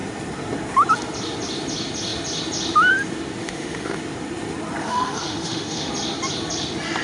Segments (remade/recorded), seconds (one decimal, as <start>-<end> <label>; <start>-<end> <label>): 0.0-3.4 recorded; 3.4-4.0 remade; 4.0-4.8 recorded; 4.8-5.9 remade; 5.9-7.0 recorded